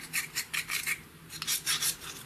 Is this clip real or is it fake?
real